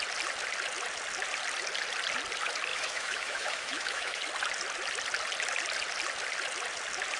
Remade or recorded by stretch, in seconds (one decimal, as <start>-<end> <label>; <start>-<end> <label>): 0.0-2.7 recorded; 2.7-4.2 remade; 4.2-7.2 recorded